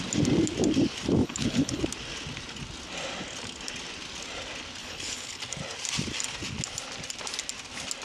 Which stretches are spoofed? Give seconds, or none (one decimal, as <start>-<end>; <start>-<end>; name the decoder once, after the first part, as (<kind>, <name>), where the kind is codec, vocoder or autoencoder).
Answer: 1.2-1.8 (codec, HILCodec); 4.8-5.4